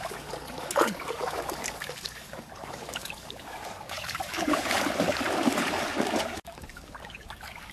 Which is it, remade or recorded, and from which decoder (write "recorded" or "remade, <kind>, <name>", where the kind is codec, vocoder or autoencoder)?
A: remade, codec, DAC